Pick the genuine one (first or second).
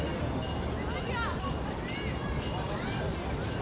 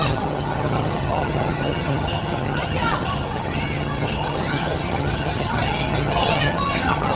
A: first